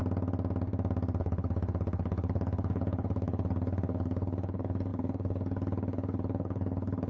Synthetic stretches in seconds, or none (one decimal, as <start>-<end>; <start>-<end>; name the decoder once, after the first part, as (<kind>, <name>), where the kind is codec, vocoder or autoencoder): 1.2-7.1 (codec, HILCodec)